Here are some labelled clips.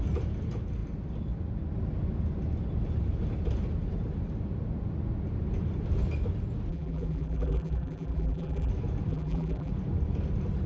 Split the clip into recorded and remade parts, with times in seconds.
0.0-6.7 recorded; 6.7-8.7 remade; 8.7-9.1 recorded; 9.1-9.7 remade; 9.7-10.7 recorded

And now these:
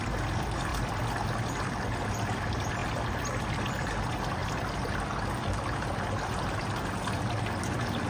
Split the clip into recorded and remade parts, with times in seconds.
0.0-8.1 recorded

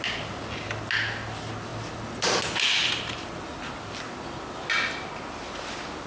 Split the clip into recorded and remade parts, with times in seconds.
0.0-6.1 recorded

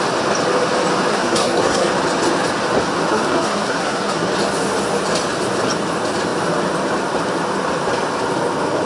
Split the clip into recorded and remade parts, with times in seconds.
0.0-1.1 recorded; 1.1-1.9 remade; 1.9-3.1 recorded; 3.1-4.3 remade; 4.3-8.9 recorded

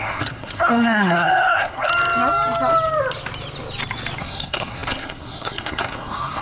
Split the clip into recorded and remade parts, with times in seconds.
0.0-1.9 remade; 1.9-4.2 recorded; 4.2-6.4 remade

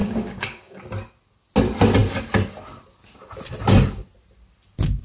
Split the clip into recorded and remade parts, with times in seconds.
0.0-0.8 remade; 0.8-5.0 recorded